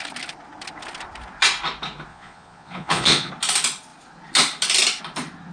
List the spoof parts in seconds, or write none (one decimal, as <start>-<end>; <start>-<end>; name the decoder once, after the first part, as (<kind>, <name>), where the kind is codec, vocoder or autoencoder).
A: 2.1-3.3 (vocoder, Vocos)